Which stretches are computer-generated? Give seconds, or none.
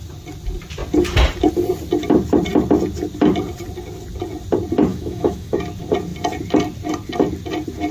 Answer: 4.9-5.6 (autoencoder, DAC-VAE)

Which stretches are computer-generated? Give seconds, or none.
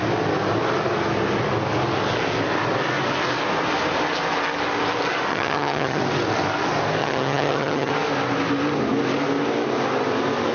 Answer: 5.3-6.0 (vocoder, HiFi-GAN); 7.0-7.9